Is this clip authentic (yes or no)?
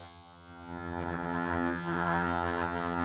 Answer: no